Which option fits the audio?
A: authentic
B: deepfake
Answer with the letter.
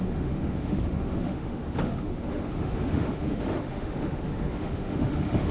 B